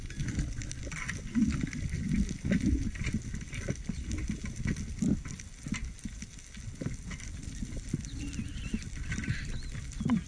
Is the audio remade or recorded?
recorded